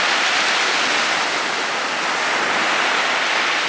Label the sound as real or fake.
real